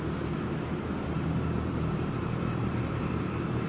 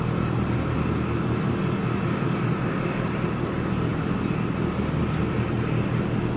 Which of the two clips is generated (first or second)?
first